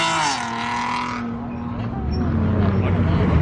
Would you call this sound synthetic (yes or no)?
no